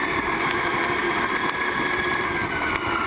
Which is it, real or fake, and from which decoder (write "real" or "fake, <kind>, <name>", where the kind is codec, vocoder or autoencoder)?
real